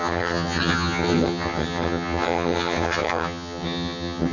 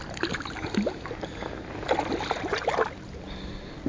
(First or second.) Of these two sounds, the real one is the second